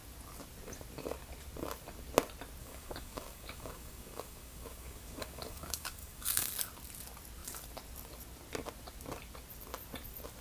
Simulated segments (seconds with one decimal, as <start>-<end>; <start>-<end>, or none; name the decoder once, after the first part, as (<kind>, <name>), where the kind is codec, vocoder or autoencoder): 2.6-6.5 (codec, DAC)